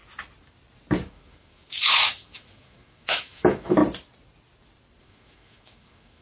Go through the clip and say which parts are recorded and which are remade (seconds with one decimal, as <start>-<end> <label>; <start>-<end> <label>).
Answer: 0.0-1.1 recorded; 1.1-3.8 remade; 3.8-5.0 recorded; 5.0-6.2 remade